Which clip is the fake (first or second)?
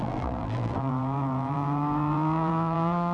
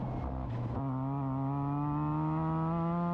first